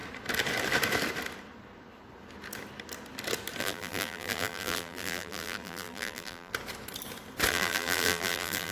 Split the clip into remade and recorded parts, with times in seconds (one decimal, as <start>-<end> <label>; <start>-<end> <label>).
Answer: 0.0-3.6 recorded; 3.6-6.5 remade; 6.5-7.5 recorded; 7.5-8.7 remade